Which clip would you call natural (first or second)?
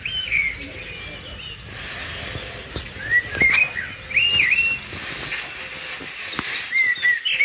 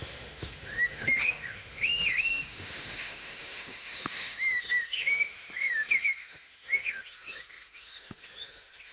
first